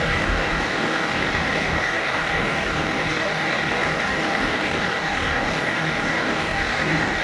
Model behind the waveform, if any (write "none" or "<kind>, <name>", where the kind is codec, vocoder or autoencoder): codec, DAC